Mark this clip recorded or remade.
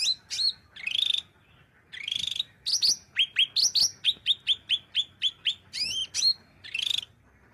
recorded